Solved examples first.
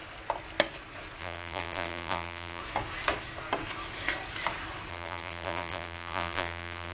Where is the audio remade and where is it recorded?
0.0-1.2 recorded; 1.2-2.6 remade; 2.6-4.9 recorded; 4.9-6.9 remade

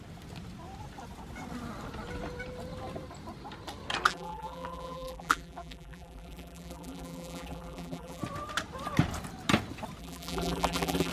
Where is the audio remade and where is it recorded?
0.0-4.1 recorded; 4.1-8.2 remade; 8.2-10.0 recorded; 10.0-11.1 remade

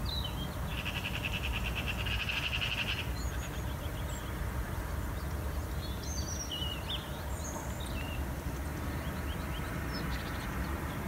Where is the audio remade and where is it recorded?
0.0-8.7 recorded; 8.7-9.8 remade; 9.8-11.1 recorded